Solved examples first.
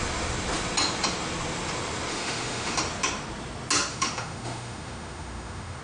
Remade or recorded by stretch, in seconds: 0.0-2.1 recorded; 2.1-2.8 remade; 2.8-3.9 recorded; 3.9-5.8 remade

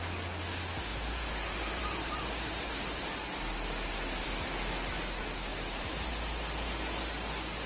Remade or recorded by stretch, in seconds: 0.0-0.9 recorded; 0.9-3.0 remade; 3.0-7.7 recorded

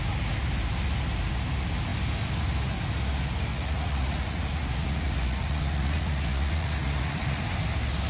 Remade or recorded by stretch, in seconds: 0.0-3.5 recorded; 3.5-7.4 remade; 7.4-8.1 recorded

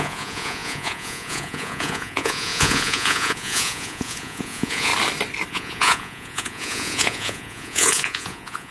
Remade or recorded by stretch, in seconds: 0.0-4.9 remade; 4.9-5.5 recorded; 5.5-8.7 remade

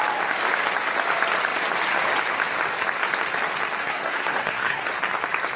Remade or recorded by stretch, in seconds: 0.0-3.8 recorded; 3.8-4.9 remade; 4.9-5.6 recorded